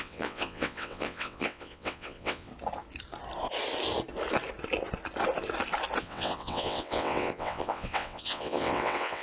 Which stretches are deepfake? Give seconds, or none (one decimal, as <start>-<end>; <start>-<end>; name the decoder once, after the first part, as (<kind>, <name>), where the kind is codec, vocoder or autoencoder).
0.0-2.5 (vocoder, WaveNeXt); 6.0-9.2